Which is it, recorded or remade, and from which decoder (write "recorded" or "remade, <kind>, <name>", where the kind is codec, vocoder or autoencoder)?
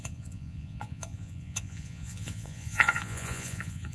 remade, vocoder, Vocos